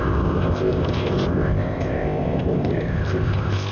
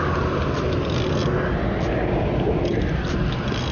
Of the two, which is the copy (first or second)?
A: first